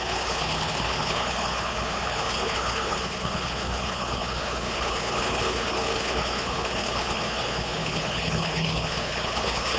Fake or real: fake